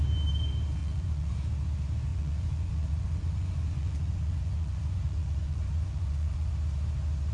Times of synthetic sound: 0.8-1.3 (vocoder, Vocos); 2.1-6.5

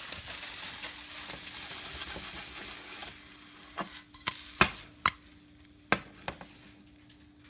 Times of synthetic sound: none

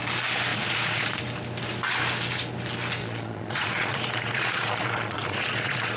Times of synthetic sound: 0.5-1.2 (vocoder, Vocos); 3.0-6.0

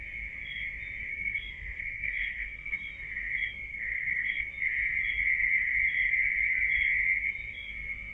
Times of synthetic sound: 1.1-2.9 (codec, SNAC); 3.7-4.5

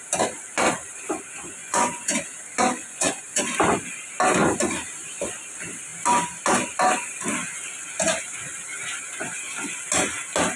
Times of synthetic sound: 1.6-2.2 (vocoder, Vocos); 2.8-3.4

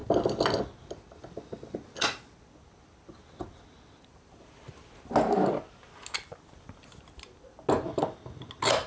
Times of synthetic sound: none